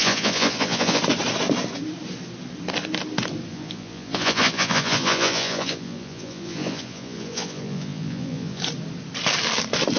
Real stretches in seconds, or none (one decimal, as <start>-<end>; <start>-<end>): 1.0-3.5; 8.6-10.0